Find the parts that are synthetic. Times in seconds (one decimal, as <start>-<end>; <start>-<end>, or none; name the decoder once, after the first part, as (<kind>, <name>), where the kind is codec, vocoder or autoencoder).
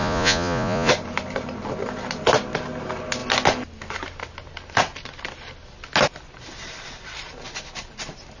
0.0-0.9 (vocoder, Vocos)